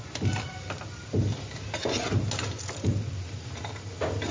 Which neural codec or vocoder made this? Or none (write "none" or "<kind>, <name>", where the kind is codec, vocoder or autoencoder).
none